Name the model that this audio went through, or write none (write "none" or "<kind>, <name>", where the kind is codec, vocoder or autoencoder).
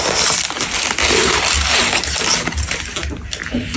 none